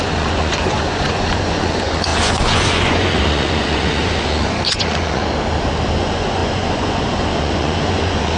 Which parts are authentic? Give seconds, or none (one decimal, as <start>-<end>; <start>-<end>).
5.2-6.0